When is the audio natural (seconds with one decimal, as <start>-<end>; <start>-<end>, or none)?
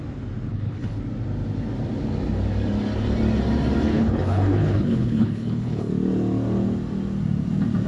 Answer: 0.0-0.5; 1.0-3.9; 5.9-7.9